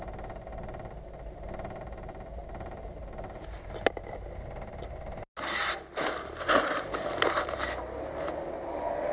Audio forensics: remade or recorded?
recorded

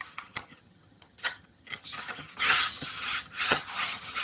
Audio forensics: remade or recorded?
remade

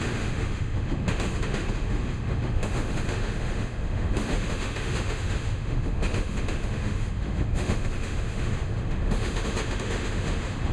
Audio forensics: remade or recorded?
remade